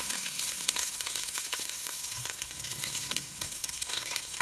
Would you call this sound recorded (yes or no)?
no